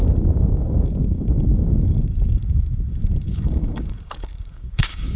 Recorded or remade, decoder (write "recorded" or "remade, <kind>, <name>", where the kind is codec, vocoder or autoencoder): remade, codec, DAC